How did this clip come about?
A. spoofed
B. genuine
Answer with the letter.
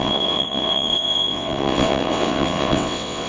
A